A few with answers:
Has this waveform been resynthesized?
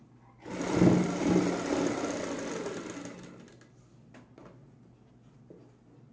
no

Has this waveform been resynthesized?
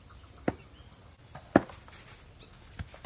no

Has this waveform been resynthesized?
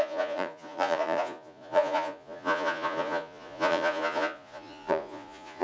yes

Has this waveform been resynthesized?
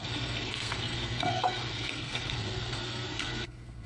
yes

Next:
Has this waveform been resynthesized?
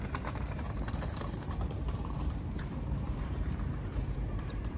yes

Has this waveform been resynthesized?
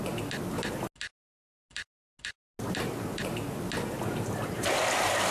no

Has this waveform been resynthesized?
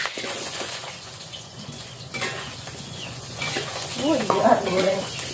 yes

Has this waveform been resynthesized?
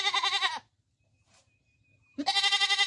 no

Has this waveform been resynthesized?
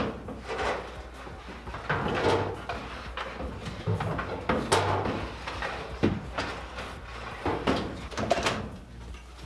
no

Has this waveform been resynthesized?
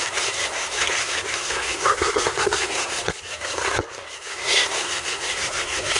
yes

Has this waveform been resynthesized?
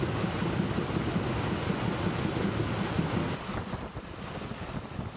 no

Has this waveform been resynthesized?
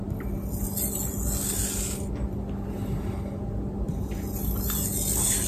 no